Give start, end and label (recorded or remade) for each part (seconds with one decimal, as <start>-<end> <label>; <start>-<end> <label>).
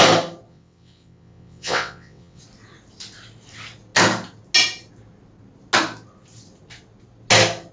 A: 0.0-0.5 recorded; 0.5-2.4 remade; 2.4-7.7 recorded